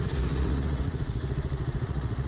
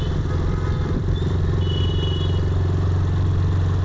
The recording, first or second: second